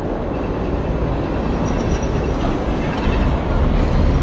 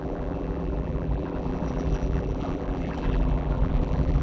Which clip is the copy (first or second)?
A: second